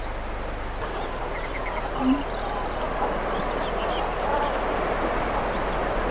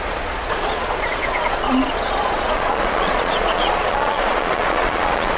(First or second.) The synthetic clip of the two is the second